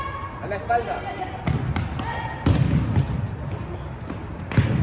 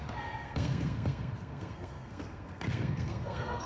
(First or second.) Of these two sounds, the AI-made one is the second